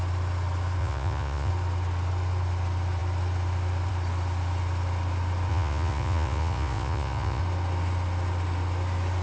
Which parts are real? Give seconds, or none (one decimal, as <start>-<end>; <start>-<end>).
0.0-0.8; 1.5-5.5; 7.4-9.2